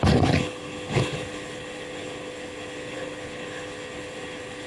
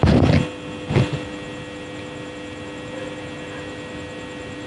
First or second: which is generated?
first